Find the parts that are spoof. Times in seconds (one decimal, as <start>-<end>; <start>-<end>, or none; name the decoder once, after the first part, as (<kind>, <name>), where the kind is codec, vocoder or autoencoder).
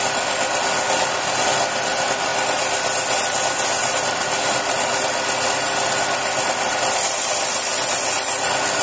none